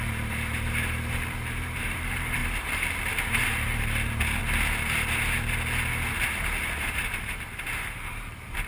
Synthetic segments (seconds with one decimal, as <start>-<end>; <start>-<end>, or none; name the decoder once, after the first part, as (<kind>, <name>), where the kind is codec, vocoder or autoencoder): 0.0-4.4 (vocoder, BigVGAN v2); 6.6-8.7